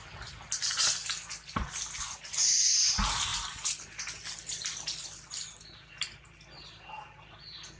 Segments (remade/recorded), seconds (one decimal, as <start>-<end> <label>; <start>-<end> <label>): 0.0-7.8 recorded